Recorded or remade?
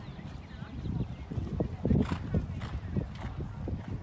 recorded